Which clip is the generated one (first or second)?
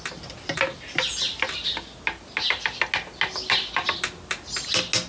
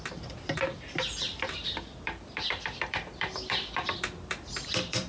second